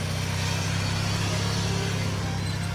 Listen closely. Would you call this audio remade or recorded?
recorded